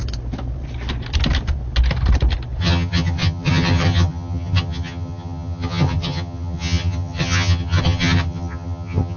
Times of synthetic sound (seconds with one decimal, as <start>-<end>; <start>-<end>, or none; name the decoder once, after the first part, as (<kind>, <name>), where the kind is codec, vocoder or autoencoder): 2.6-9.2 (vocoder, HiFi-GAN)